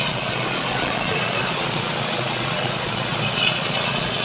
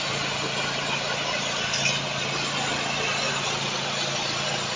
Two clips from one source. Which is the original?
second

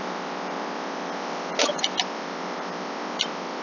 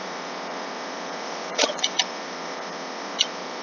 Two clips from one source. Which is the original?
first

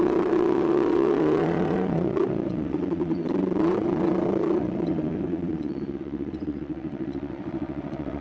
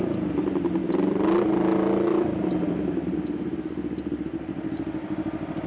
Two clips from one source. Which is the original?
second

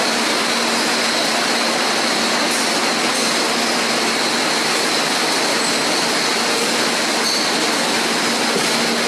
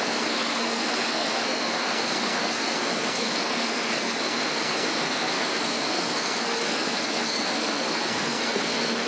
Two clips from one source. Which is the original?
first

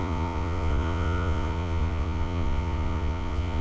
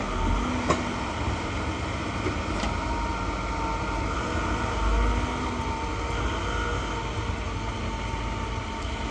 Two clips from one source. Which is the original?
second